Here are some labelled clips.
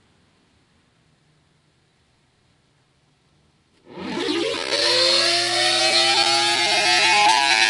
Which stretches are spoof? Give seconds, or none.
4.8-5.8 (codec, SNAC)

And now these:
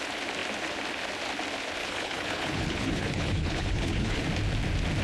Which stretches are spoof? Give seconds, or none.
1.8-4.2 (codec, HILCodec)

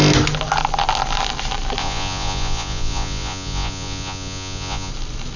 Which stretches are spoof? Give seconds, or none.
1.8-4.9 (vocoder, Vocos)

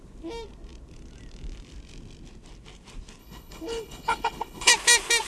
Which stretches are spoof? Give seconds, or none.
3.2-4.7 (codec, HILCodec)

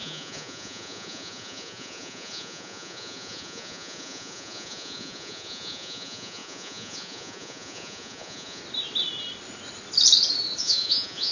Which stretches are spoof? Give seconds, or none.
0.0-8.6 (vocoder, Vocos); 10.6-11.3